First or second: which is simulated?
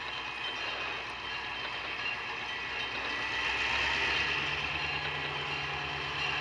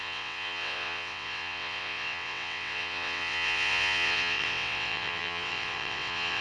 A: second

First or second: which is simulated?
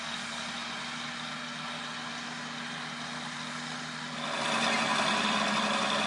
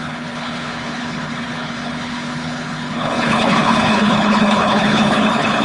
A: second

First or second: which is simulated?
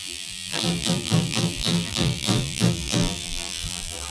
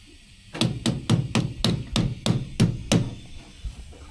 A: first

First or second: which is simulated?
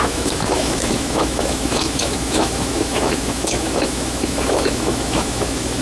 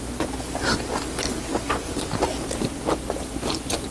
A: first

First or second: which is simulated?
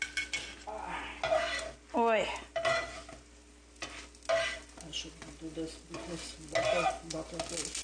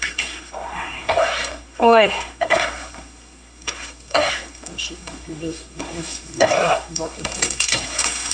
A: second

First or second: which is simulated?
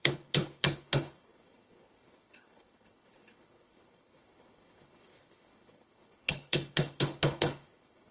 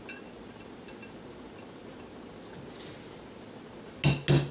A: first